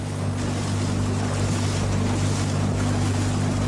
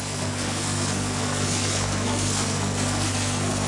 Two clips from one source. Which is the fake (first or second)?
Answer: second